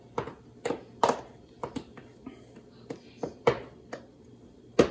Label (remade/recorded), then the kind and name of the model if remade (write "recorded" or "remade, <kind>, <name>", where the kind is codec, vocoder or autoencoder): recorded